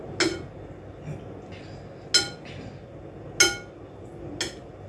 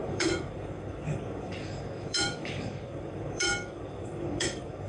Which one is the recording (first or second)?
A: first